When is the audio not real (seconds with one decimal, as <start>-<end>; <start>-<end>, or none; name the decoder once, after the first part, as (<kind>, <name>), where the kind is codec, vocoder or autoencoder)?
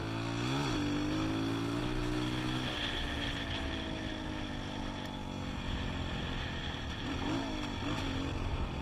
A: none